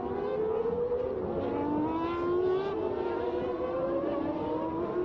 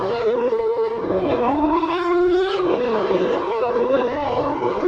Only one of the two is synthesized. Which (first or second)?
second